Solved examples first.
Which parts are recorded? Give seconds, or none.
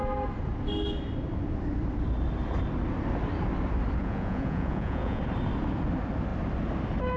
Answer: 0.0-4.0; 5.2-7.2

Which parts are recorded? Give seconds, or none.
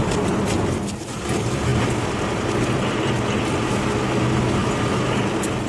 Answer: 0.0-5.7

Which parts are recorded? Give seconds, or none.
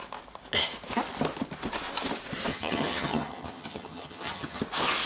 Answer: 0.0-2.5; 4.6-5.1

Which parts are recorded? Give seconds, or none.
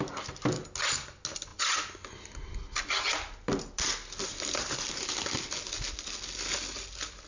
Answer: 0.0-7.3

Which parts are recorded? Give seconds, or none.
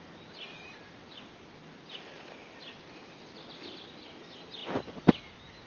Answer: 0.0-5.7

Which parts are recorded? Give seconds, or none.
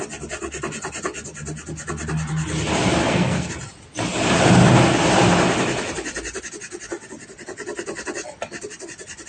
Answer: 0.0-3.0; 3.5-9.3